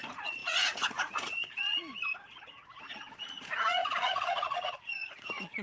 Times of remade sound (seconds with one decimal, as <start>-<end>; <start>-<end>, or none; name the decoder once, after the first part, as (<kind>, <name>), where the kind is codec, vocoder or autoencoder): 0.0-5.6 (vocoder, Vocos)

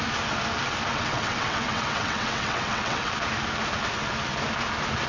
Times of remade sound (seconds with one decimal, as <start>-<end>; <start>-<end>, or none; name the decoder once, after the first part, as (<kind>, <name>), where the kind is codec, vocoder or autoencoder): 0.9-3.1 (vocoder, WaveNeXt)

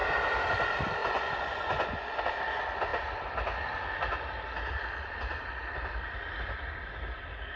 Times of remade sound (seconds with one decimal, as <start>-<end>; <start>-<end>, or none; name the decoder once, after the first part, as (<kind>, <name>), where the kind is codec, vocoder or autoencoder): 1.0-2.2 (vocoder, Vocos)

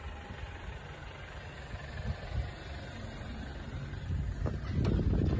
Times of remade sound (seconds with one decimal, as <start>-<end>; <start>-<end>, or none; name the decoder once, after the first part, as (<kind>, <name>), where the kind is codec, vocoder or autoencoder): none

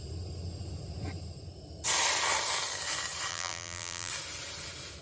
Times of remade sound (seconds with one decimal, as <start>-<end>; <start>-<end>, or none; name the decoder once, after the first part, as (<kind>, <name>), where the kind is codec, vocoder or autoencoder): 3.3-4.1 (vocoder, BigVGAN v2)

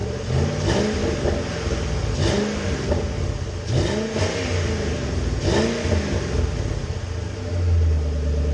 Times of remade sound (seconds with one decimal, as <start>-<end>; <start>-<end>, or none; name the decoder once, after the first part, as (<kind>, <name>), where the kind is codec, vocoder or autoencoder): none

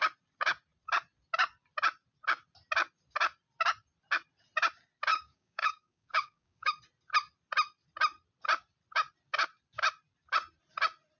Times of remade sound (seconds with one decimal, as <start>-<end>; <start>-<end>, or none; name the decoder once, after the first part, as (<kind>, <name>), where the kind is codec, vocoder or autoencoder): 5.1-6.7 (codec, DAC)